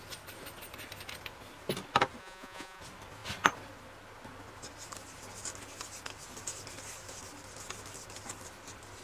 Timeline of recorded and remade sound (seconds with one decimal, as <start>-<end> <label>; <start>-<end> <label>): 0.0-2.2 recorded; 2.2-2.8 remade; 2.8-9.0 recorded